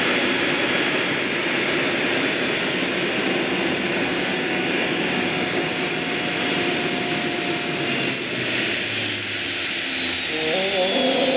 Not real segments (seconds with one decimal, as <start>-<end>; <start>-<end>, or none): 3.9-5.9